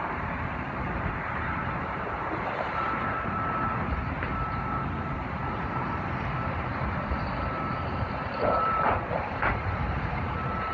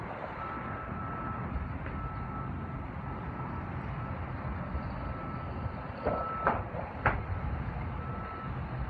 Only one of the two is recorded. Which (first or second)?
second